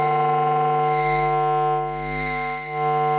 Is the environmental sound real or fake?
real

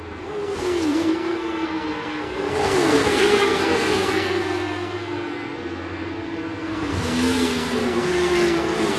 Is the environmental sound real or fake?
fake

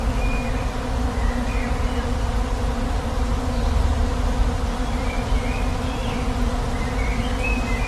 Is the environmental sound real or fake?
fake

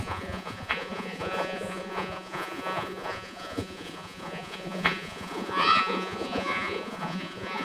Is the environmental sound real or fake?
fake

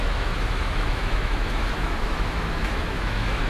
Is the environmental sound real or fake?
fake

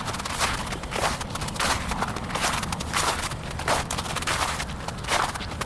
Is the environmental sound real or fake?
real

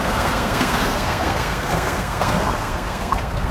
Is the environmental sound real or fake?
fake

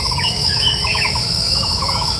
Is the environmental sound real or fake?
fake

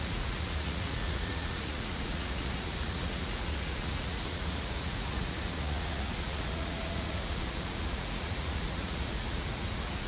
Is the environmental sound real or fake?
fake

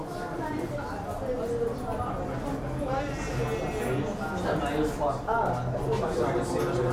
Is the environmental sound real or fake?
real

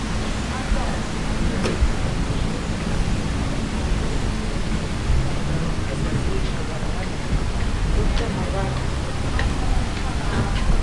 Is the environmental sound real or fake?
real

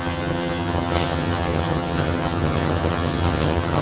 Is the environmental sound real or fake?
fake